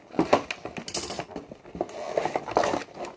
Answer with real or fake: real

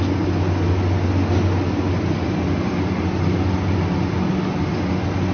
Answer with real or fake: real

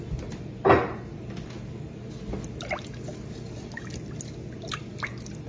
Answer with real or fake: real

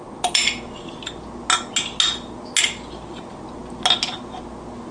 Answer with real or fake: real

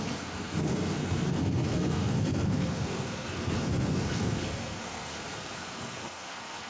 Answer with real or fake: fake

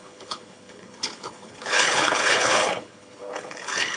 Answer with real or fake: fake